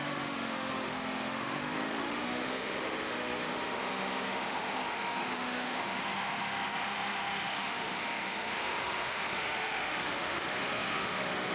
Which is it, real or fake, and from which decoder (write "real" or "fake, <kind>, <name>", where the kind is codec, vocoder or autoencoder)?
fake, autoencoder, DAC-VAE